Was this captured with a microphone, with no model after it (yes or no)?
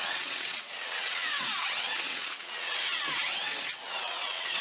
no